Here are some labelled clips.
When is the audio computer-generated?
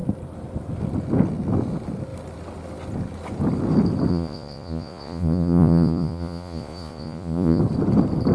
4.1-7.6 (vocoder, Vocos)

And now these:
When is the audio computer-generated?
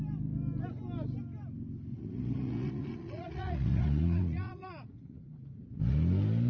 1.9-5.8 (vocoder, Vocos)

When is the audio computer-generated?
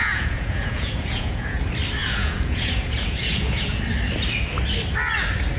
0.0-1.6 (vocoder, Vocos); 2.0-3.8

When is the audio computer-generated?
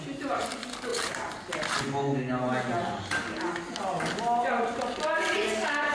none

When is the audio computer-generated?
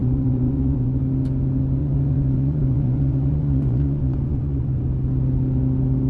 0.0-1.0 (vocoder, Vocos); 1.8-4.8